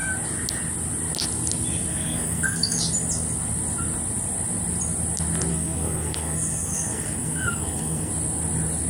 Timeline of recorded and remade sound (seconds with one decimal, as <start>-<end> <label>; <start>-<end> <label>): 0.0-1.9 recorded; 1.9-2.8 remade; 2.8-5.5 recorded; 5.5-8.1 remade; 8.1-8.9 recorded